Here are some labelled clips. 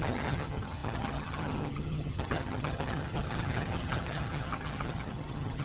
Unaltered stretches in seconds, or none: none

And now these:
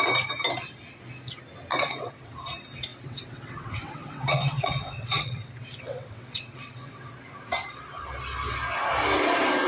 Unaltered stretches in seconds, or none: 0.0-1.7; 2.3-2.9; 7.1-9.7

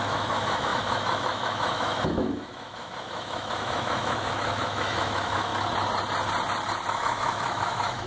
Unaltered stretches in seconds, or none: 5.5-6.9

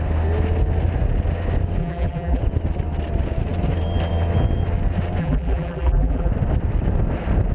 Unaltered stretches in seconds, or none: 0.0-1.8; 2.4-5.2; 6.3-7.5

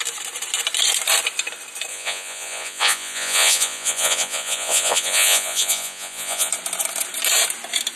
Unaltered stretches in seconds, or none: 0.0-1.9; 6.5-8.0